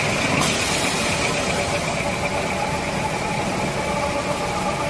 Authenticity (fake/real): real